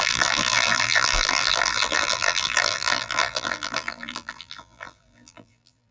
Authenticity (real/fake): fake